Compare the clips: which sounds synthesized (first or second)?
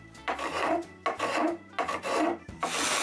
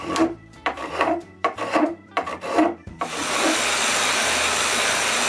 second